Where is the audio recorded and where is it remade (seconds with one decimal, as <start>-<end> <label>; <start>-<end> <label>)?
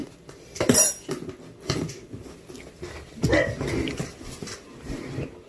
0.0-5.5 recorded